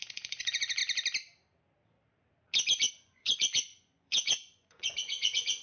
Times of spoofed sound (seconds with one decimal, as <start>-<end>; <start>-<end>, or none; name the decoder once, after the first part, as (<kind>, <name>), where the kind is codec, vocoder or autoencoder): 0.0-0.8 (vocoder, Vocos); 2.9-5.6